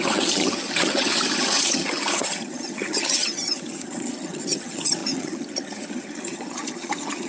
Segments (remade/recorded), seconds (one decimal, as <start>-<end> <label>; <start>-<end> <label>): 0.0-7.3 remade